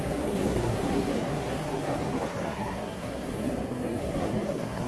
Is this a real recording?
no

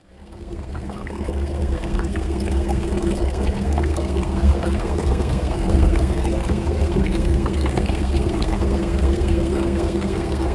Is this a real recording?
no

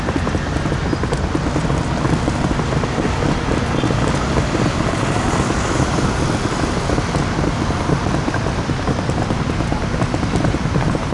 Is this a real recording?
yes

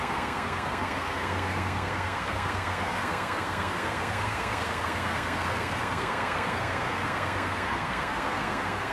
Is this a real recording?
no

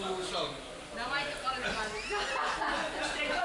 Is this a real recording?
yes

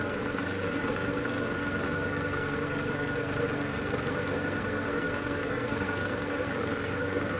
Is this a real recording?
no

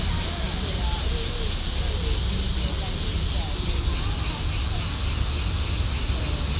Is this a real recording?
yes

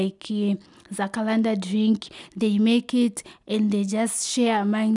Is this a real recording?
yes